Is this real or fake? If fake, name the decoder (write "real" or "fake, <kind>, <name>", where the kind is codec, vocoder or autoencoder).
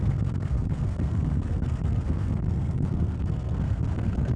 fake, codec, SNAC